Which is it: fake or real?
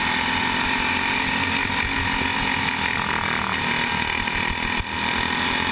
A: real